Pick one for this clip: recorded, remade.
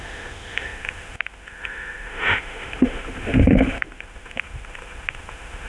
remade